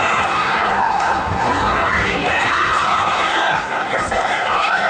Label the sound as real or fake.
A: fake